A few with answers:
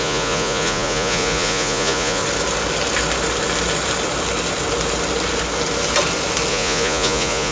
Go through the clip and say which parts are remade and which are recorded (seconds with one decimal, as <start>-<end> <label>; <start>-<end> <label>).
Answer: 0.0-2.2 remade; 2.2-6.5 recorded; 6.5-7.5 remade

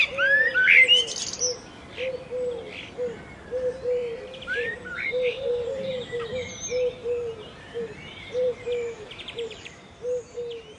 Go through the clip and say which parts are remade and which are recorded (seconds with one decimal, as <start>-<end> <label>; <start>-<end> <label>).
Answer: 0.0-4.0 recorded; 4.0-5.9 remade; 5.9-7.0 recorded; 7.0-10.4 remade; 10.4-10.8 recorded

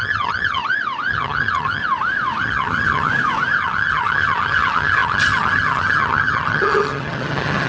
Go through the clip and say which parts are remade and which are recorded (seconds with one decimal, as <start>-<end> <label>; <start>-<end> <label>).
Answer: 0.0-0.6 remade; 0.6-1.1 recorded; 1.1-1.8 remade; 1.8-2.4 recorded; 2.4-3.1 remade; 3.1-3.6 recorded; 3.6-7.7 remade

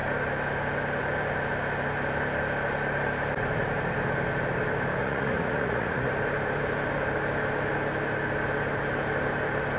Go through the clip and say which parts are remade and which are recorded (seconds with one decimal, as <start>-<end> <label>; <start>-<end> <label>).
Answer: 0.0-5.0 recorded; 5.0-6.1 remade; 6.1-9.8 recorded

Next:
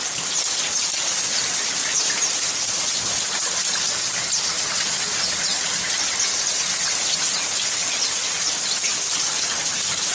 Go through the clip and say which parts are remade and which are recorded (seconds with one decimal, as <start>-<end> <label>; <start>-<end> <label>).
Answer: 0.0-10.1 recorded